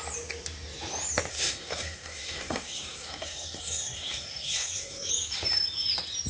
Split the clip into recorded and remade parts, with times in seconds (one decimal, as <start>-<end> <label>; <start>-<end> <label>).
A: 0.0-1.3 recorded; 1.3-5.1 remade; 5.1-6.3 recorded

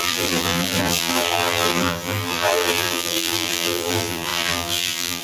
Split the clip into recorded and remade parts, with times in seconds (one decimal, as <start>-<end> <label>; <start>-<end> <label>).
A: 0.0-5.2 remade

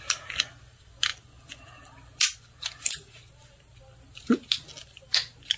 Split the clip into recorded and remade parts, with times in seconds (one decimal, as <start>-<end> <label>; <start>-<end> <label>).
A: 0.0-5.6 recorded